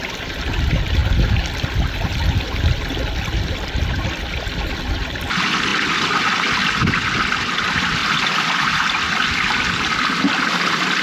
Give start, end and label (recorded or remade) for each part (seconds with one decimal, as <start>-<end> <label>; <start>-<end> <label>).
0.0-11.0 recorded